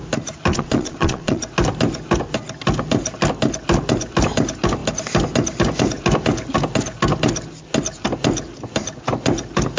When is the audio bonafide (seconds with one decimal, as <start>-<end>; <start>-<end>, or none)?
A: 0.0-0.5; 1.4-9.8